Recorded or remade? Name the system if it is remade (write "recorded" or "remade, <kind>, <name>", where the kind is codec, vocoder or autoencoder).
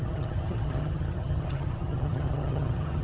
remade, vocoder, HiFi-GAN